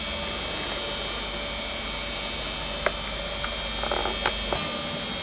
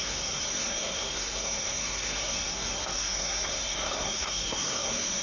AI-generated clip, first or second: second